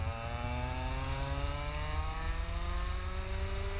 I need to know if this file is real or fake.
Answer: real